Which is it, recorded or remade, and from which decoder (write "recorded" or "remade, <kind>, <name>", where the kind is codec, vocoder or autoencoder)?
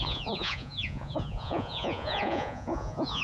remade, vocoder, Vocos